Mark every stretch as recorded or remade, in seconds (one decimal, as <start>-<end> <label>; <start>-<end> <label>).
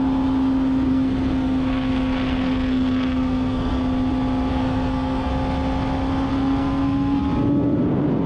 0.0-0.9 recorded; 0.9-3.8 remade; 3.8-4.5 recorded; 4.5-5.3 remade; 5.3-6.3 recorded; 6.3-7.2 remade; 7.2-8.3 recorded